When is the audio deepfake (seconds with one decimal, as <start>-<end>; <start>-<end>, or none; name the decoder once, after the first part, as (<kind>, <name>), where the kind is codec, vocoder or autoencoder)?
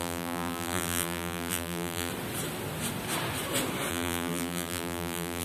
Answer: 0.0-2.1 (vocoder, BigVGAN v2); 3.9-5.4